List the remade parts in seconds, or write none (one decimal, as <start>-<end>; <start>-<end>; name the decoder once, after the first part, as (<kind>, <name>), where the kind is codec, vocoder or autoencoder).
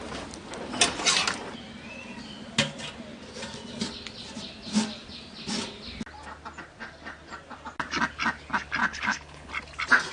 8.8-9.5 (codec, HILCodec)